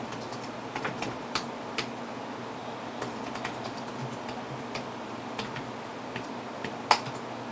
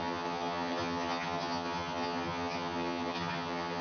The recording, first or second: first